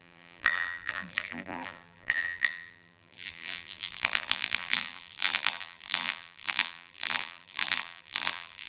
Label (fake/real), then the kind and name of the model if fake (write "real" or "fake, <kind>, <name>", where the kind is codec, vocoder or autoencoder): fake, vocoder, BigVGAN v2